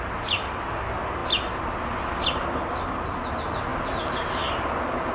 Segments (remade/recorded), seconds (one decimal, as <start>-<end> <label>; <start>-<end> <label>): 0.0-5.1 recorded